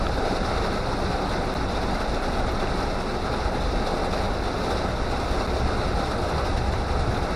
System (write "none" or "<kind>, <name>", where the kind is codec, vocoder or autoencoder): none